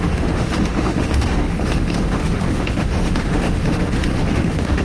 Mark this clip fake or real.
fake